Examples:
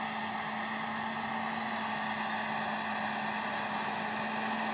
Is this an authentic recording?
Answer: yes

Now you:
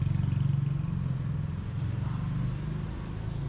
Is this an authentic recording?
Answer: yes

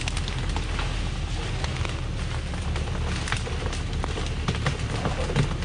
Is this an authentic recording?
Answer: yes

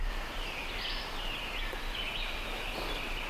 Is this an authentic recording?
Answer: yes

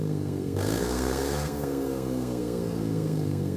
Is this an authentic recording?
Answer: no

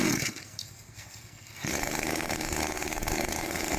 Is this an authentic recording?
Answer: no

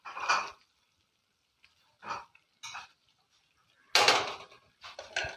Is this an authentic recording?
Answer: yes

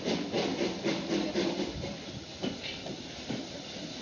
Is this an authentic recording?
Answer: yes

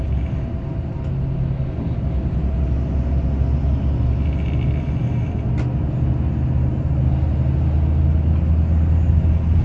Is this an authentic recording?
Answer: yes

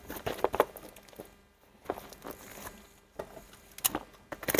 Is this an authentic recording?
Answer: yes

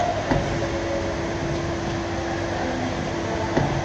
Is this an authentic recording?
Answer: yes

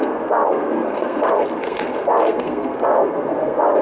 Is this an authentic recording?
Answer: no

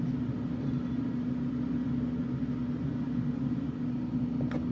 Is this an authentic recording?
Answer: yes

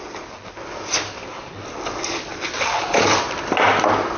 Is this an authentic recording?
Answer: yes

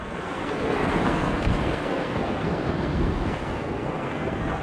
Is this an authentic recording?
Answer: no